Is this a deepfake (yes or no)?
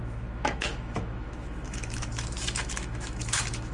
yes